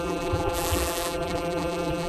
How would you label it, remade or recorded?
remade